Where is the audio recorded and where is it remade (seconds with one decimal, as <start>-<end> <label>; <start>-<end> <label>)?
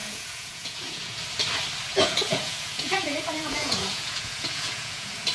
0.0-1.2 remade; 1.2-1.9 recorded; 1.9-5.3 remade